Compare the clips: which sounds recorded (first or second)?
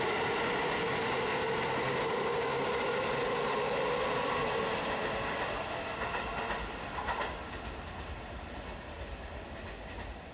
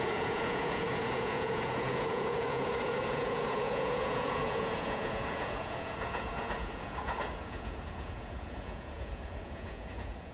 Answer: first